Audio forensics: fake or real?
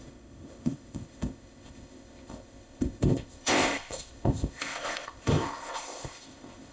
fake